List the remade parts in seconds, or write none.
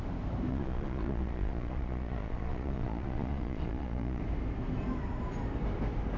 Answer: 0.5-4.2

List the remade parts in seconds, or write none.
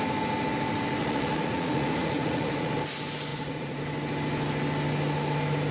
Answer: 1.0-2.7; 3.3-3.8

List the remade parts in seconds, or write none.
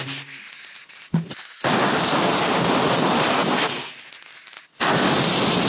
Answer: none